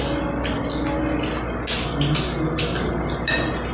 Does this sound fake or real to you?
real